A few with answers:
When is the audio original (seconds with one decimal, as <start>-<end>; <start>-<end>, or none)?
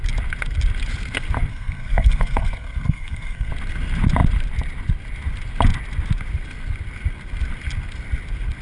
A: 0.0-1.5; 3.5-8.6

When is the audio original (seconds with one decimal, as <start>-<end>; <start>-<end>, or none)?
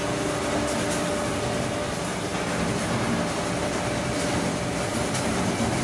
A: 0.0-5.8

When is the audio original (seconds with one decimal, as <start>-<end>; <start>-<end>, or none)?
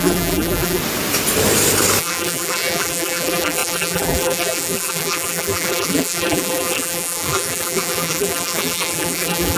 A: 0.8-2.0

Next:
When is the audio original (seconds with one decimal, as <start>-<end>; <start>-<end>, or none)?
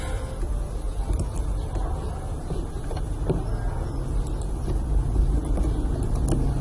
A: 0.0-6.6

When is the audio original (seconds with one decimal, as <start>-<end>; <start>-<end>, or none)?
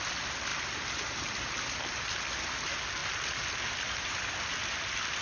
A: 0.0-5.2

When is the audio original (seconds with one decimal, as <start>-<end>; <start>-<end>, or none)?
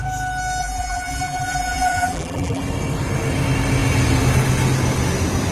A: 0.0-0.6; 2.6-5.5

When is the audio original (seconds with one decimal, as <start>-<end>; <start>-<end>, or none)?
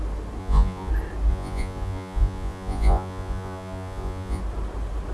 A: 0.0-0.4; 0.9-1.3; 4.4-5.1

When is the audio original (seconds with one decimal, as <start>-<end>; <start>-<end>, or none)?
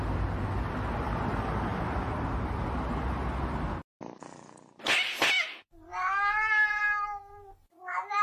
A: 0.0-8.2